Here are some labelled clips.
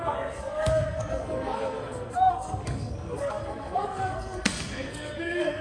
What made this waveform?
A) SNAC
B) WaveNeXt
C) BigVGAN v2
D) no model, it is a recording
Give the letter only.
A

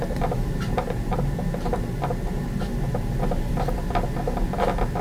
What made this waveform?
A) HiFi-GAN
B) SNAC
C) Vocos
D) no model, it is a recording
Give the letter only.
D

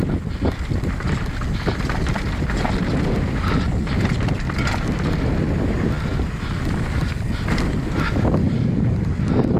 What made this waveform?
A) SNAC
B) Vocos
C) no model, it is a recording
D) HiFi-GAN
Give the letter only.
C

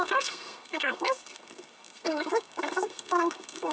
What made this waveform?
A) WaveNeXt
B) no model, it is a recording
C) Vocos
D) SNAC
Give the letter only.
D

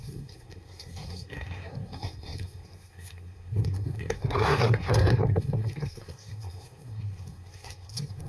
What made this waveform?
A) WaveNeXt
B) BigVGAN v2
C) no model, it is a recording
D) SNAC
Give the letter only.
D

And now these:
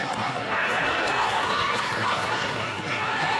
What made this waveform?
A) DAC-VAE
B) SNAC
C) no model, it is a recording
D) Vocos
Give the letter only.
B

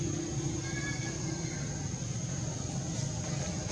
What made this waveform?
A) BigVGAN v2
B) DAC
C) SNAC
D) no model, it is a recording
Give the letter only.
D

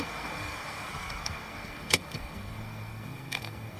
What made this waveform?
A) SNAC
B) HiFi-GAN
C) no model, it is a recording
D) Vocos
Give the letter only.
A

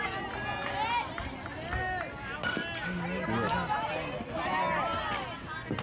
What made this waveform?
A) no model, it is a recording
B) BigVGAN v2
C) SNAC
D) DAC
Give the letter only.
A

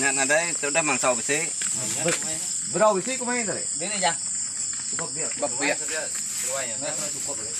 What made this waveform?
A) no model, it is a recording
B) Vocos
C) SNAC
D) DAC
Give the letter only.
A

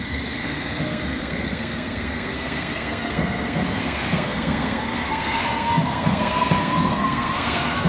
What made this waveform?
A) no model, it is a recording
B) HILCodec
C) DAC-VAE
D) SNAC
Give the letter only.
D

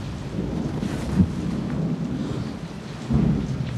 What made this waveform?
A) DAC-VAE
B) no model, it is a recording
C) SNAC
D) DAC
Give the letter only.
B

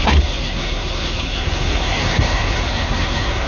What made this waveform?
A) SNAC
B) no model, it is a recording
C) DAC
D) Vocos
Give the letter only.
A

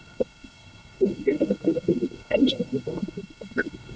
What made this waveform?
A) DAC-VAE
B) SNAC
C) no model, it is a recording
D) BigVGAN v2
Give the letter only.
B